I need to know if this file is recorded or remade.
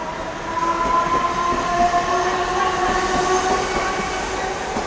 recorded